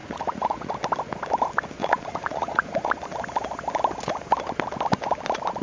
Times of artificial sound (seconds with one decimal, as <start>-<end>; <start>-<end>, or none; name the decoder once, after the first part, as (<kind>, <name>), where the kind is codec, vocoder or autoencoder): 0.0-0.7 (vocoder, Vocos); 1.8-2.9